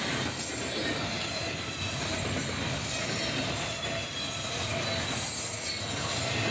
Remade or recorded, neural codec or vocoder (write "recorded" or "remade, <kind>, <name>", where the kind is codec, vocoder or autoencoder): recorded